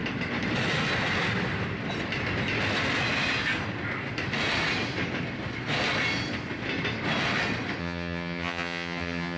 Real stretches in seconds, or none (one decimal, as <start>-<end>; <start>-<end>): 0.0-7.8

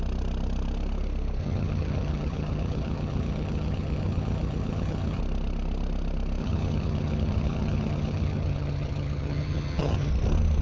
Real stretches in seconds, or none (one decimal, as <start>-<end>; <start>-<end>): 0.0-1.4; 5.2-6.4; 10.1-10.6

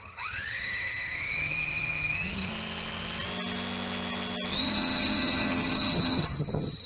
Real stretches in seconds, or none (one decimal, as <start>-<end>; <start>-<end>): 2.5-4.5